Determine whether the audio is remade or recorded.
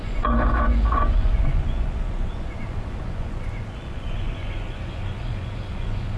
remade